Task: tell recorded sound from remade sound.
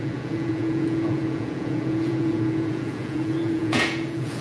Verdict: remade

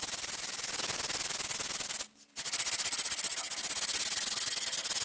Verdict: recorded